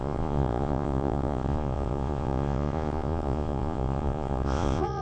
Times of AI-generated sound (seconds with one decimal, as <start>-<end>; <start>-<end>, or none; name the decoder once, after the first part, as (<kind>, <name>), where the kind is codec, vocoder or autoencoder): 0.0-5.0 (vocoder, Vocos)